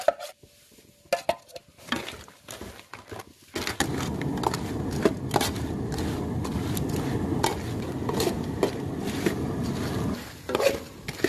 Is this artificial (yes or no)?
no